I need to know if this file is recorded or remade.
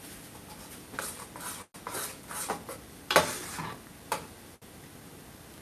recorded